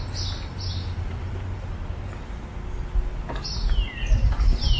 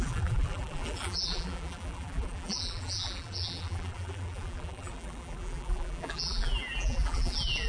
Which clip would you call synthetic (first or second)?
second